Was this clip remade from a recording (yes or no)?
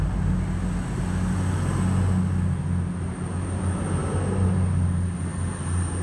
no